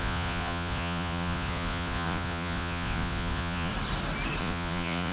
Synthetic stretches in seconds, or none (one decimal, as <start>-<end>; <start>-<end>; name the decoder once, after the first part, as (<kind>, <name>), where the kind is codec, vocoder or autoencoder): 0.0-3.7 (vocoder, Vocos); 4.4-5.1